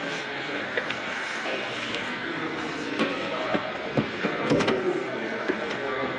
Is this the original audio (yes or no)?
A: no